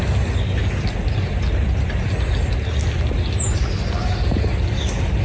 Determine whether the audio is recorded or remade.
recorded